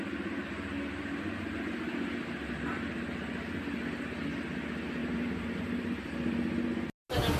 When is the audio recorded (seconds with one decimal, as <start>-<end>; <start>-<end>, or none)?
0.0-5.0; 5.6-7.4